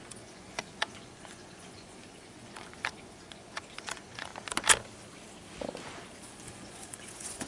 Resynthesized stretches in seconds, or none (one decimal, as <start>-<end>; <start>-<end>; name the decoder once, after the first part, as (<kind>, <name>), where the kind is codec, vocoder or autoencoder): 0.0-4.3 (vocoder, Vocos); 6.2-7.5